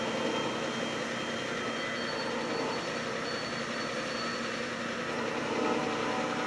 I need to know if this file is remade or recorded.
recorded